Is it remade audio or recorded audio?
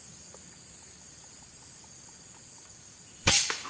remade